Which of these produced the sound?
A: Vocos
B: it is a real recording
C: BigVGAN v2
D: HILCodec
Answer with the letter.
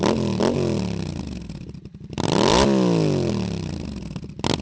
B